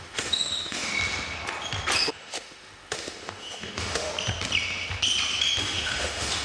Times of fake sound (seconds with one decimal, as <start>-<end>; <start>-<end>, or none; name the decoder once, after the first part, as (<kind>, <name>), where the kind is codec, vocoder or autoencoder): 0.0-0.9 (autoencoder, DAC-VAE); 2.1-4.1; 5.6-6.4